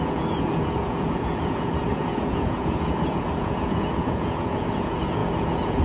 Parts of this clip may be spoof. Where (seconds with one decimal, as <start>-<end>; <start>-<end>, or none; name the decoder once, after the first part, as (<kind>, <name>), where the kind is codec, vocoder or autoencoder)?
0.0-5.8 (vocoder, Vocos)